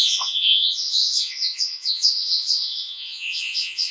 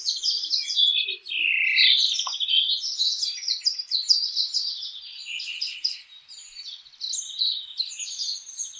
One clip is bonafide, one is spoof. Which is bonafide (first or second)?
second